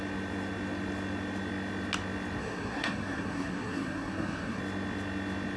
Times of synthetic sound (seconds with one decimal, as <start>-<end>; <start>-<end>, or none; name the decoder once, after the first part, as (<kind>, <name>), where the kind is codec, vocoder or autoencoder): 2.4-4.6 (codec, SNAC)